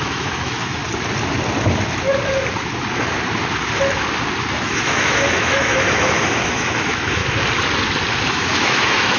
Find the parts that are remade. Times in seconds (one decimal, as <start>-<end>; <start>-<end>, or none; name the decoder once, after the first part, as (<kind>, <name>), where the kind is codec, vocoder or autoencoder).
0.0-0.8 (autoencoder, DAC-VAE); 4.5-7.2; 8.3-9.2